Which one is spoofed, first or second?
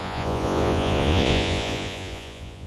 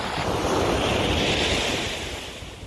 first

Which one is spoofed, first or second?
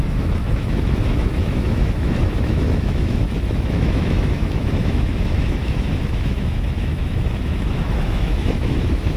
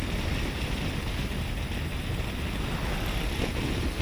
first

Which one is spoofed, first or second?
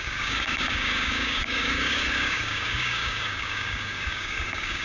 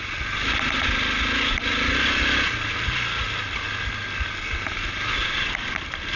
first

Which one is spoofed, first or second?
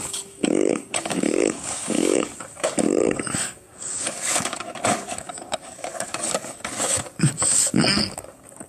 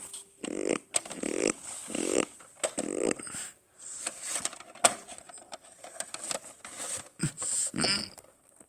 first